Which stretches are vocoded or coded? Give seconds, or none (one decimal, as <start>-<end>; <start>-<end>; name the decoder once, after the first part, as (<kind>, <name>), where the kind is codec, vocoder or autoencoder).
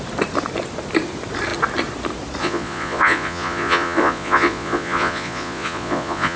2.4-6.4 (vocoder, Vocos)